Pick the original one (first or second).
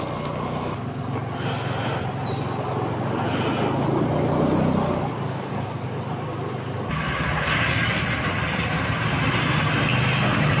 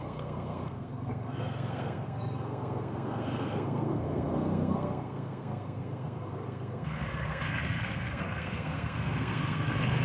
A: first